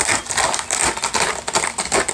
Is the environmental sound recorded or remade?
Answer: recorded